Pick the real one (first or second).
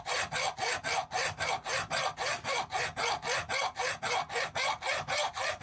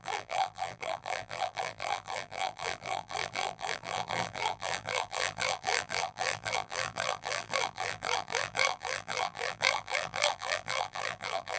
first